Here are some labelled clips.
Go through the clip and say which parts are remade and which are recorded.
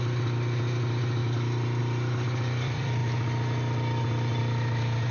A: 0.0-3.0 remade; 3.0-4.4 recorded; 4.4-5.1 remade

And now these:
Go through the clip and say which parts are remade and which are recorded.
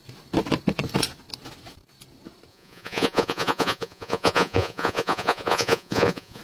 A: 0.0-2.5 recorded; 2.5-6.4 remade